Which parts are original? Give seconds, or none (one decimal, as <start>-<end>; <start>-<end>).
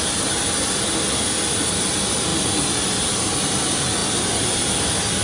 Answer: 0.0-5.2